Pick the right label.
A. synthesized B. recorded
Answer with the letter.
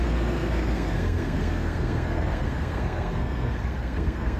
A